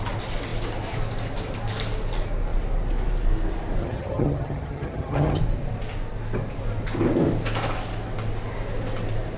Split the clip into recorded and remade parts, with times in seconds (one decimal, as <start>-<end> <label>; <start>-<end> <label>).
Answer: 0.0-3.8 recorded; 3.8-5.4 remade; 5.4-9.4 recorded